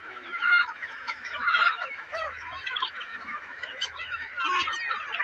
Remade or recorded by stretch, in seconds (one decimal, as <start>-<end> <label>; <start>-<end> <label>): 0.0-4.3 remade; 4.3-5.2 recorded